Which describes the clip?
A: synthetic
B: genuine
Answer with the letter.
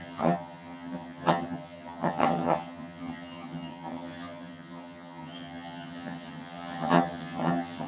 A